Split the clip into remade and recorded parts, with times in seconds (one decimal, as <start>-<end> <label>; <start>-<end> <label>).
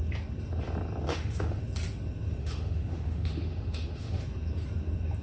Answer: 0.0-1.1 recorded; 1.1-1.6 remade; 1.6-2.4 recorded; 2.4-4.2 remade; 4.2-5.2 recorded